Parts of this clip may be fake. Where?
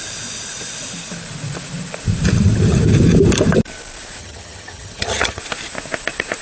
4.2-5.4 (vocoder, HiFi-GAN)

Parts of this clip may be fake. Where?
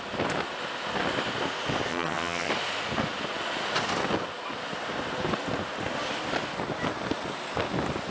1.9-2.5 (vocoder, HiFi-GAN)